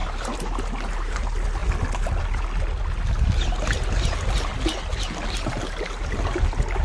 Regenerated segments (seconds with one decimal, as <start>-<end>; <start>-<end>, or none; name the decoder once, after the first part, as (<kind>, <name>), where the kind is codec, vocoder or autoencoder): 0.0-1.2 (vocoder, BigVGAN v2)